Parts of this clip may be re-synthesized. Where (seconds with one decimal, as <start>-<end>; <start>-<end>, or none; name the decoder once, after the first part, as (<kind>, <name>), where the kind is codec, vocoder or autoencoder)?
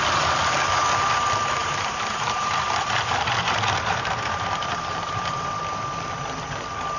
1.6-5.6 (vocoder, BigVGAN v2)